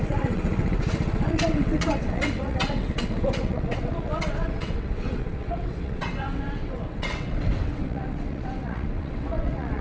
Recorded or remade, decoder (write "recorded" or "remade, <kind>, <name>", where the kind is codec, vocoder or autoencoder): remade, vocoder, WaveNeXt